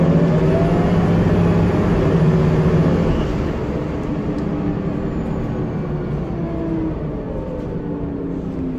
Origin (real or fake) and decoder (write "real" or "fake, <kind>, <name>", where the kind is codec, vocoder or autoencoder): real